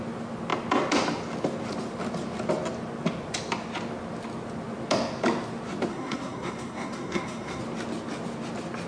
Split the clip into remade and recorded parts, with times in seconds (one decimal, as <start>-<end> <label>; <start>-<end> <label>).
0.0-5.9 recorded; 5.9-7.6 remade; 7.6-8.9 recorded